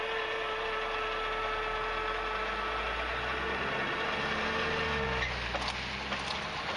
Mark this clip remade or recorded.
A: recorded